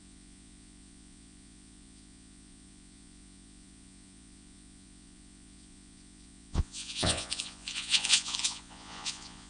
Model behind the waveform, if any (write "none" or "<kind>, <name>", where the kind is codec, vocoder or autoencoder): vocoder, Vocos